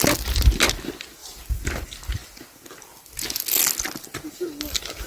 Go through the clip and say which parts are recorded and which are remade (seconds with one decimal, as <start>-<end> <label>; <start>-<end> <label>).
0.0-5.1 recorded